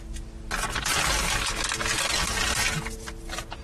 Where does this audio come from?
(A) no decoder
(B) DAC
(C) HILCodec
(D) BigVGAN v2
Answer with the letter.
A